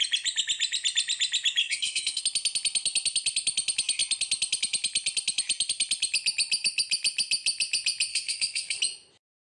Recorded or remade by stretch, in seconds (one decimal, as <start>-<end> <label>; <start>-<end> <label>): 0.0-1.6 recorded; 1.6-2.2 remade; 2.2-8.1 recorded; 8.1-8.8 remade; 8.8-9.5 recorded